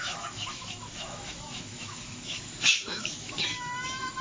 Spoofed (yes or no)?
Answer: yes